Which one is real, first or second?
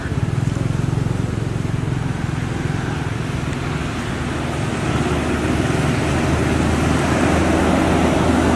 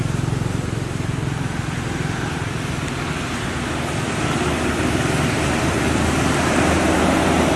first